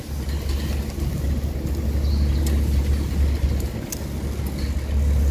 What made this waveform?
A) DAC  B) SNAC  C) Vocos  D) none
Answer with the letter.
D